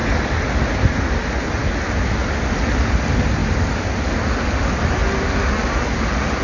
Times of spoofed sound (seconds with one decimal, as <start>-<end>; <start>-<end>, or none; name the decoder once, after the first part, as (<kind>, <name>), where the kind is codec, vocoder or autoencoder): 3.4-4.6 (vocoder, BigVGAN v2); 5.0-6.4